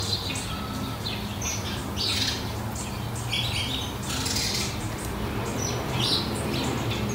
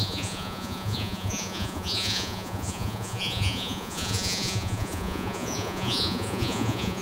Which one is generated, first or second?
second